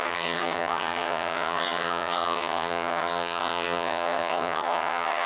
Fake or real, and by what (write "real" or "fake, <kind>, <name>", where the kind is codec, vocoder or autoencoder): fake, vocoder, HiFi-GAN